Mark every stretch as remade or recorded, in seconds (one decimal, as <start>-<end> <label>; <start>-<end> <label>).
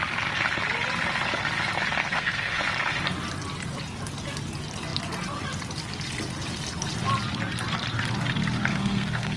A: 0.0-2.0 recorded; 2.0-2.6 remade; 2.6-8.7 recorded; 8.7-9.4 remade